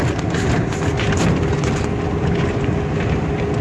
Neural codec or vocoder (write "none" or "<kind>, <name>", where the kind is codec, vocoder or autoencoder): none